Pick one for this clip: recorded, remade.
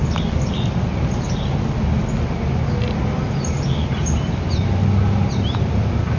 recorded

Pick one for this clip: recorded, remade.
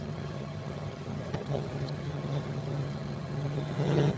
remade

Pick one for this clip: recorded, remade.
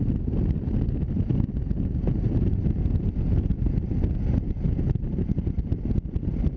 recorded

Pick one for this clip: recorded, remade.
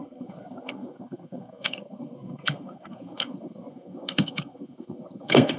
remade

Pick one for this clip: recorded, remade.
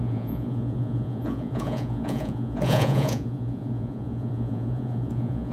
remade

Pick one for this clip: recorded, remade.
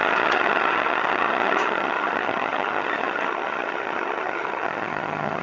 remade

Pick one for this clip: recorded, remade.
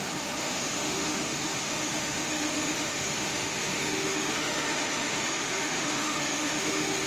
remade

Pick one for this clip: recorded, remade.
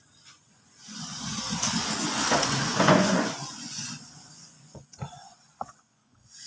remade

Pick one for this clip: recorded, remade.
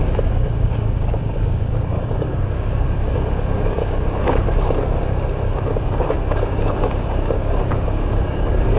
remade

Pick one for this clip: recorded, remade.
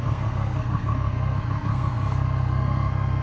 remade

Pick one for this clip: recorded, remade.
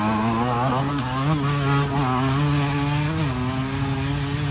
recorded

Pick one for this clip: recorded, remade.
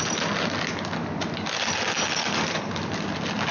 recorded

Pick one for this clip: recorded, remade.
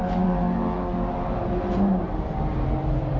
remade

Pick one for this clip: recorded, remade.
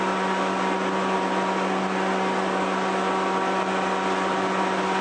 recorded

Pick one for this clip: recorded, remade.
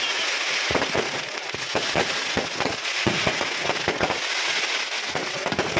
remade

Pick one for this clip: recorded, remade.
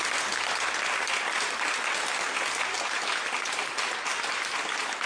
recorded